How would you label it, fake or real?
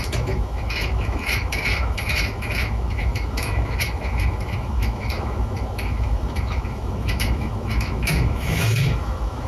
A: fake